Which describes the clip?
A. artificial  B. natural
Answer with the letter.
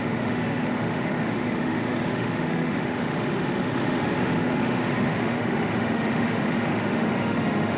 A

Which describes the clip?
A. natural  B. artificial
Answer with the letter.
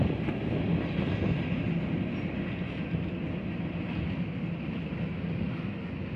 A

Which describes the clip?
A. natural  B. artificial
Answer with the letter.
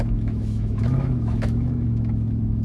B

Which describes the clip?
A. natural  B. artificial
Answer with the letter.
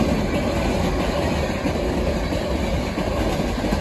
A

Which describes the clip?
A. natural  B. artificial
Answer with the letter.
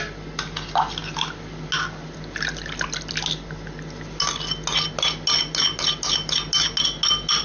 A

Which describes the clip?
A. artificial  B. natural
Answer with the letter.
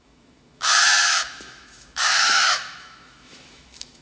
A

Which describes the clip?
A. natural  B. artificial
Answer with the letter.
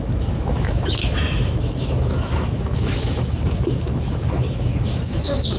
B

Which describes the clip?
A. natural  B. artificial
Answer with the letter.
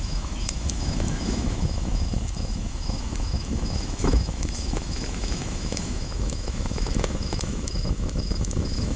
B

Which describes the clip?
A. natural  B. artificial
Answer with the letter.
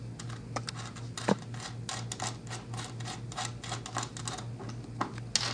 A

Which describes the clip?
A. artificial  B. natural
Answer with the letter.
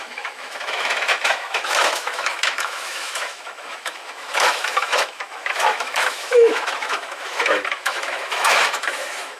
A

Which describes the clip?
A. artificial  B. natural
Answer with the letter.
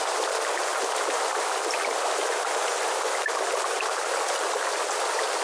B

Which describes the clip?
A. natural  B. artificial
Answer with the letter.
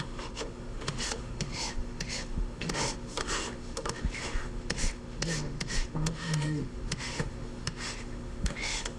B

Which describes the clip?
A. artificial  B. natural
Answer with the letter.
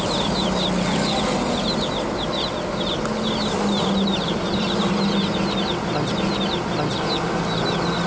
B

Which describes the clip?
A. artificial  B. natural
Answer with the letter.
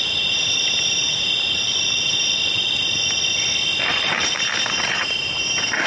B